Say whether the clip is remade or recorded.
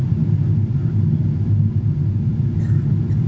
recorded